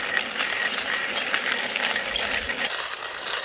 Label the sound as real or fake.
real